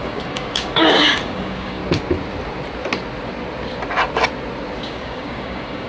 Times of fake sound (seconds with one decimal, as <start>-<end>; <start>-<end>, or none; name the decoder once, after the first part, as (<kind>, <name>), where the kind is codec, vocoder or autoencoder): 0.0-1.8 (codec, DAC); 4.8-5.9